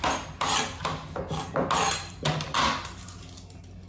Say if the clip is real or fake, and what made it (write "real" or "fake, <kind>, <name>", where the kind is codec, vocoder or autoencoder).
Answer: real